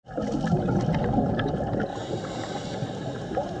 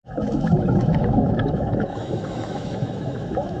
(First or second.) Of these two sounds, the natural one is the first